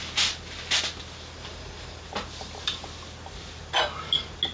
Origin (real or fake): real